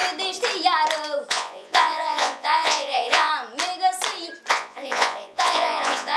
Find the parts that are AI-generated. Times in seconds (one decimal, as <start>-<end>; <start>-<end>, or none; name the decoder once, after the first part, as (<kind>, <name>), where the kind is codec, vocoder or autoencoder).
1.3-3.3 (vocoder, Vocos); 4.5-6.2